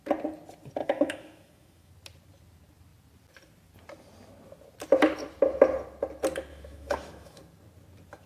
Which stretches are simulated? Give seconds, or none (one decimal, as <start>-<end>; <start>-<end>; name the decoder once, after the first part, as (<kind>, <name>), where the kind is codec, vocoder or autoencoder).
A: 0.8-1.9 (autoencoder, DAC-VAE); 6.5-7.4